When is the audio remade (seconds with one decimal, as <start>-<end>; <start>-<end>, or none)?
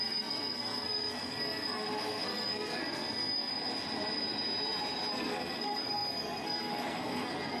0.0-3.5; 5.1-7.6